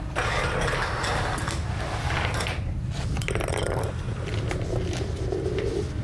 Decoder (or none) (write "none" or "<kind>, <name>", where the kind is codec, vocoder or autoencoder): none